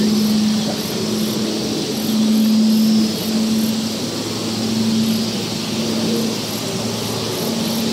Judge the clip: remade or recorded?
recorded